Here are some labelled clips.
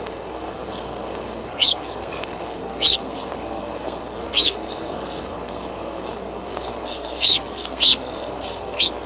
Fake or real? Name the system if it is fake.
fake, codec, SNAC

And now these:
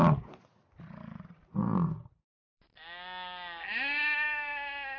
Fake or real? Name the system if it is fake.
real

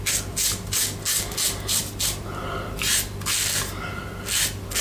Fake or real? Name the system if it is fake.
real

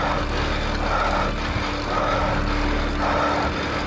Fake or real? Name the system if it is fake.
real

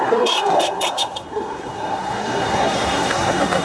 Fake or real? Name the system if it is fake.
fake, codec, SNAC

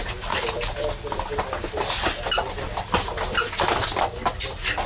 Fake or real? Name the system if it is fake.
real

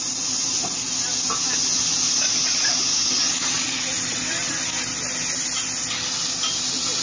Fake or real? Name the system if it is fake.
real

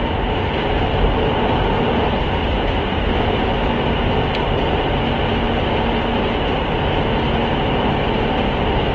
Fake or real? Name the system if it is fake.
real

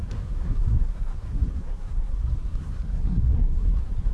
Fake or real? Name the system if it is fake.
fake, codec, SNAC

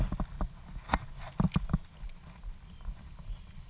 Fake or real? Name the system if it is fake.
real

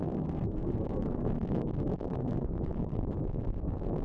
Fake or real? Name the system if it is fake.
fake, codec, SNAC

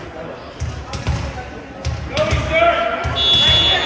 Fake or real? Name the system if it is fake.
real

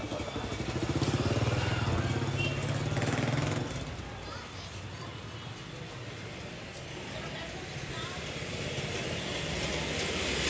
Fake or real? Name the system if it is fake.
real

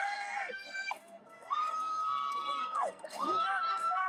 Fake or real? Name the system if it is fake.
fake, codec, SNAC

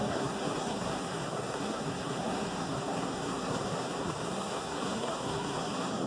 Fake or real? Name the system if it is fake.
fake, codec, SNAC